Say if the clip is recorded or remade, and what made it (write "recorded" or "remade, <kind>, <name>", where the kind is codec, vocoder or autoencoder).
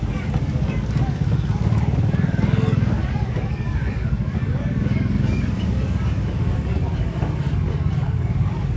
remade, codec, DAC